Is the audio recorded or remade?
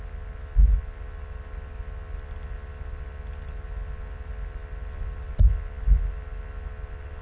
recorded